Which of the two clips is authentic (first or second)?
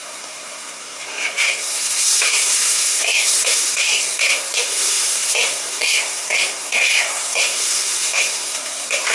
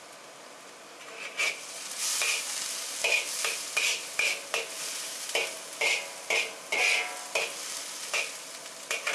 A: second